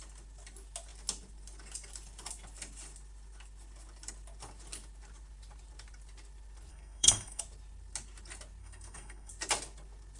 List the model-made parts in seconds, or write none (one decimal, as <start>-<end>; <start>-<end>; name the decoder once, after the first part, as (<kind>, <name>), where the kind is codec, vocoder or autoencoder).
6.7-7.4 (codec, SNAC); 8.6-9.3

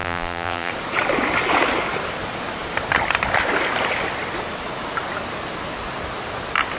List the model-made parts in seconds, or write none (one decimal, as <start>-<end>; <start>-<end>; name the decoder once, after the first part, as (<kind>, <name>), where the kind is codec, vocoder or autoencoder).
0.0-0.7 (vocoder, BigVGAN v2)

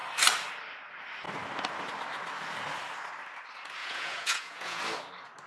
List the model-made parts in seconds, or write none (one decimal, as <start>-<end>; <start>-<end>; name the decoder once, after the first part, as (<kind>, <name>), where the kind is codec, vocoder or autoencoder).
3.8-4.8 (vocoder, Vocos)

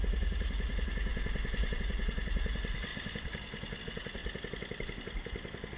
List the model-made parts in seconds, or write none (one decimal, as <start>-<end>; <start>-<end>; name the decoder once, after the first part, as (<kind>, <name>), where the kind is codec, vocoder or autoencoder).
0.0-1.1 (vocoder, Vocos); 1.8-2.9; 3.8-4.2

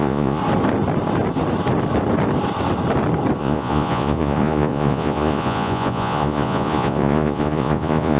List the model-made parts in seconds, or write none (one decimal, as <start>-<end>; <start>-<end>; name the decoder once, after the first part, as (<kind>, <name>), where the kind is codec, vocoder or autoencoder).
0.0-0.4 (vocoder, Vocos); 3.4-8.2

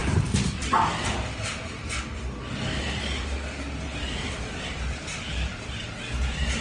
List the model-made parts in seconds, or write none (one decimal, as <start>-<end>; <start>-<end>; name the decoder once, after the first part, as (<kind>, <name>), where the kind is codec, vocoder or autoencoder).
none

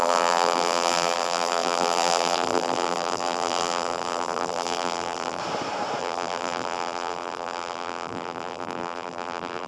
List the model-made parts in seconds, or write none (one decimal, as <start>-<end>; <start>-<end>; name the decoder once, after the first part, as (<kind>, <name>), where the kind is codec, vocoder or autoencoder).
0.0-5.4 (vocoder, BigVGAN v2); 6.0-9.7